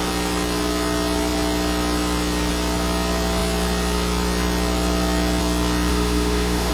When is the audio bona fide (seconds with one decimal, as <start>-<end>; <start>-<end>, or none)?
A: 0.0-5.9